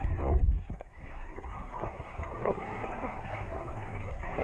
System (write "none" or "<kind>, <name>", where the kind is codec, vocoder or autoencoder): codec, SNAC